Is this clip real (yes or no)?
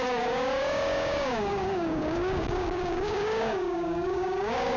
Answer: no